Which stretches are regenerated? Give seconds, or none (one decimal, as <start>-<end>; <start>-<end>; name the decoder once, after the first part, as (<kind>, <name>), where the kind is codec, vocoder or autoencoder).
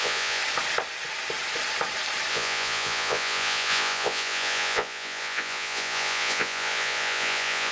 0.0-0.4 (vocoder, Vocos); 2.3-7.7